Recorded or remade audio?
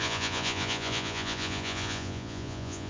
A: remade